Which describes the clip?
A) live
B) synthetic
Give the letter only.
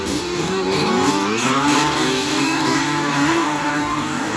B